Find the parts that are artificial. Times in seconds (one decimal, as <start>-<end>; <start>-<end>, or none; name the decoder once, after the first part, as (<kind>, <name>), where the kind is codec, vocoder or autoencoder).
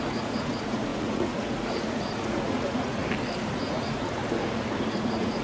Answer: 0.0-3.0 (vocoder, Vocos); 3.6-4.2; 4.9-5.4